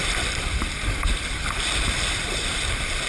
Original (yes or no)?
no